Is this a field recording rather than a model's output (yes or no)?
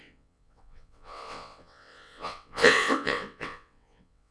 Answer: no